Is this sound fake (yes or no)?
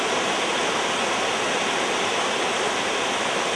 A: no